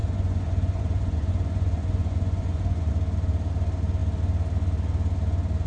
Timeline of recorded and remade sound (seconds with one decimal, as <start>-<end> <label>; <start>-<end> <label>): 0.0-2.9 remade; 2.9-5.7 recorded